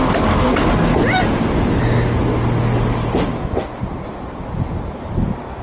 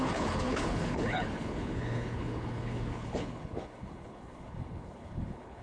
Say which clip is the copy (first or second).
second